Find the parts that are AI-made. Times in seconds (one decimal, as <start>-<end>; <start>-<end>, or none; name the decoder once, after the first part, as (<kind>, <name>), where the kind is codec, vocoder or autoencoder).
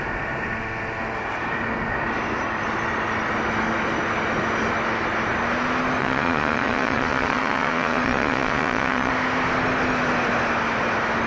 6.0-9.1 (vocoder, Vocos)